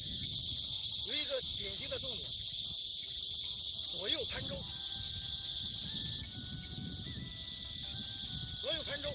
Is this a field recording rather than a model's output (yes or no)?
yes